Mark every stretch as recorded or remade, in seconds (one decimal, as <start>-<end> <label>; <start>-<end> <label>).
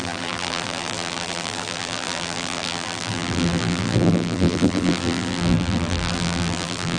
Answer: 0.0-7.0 remade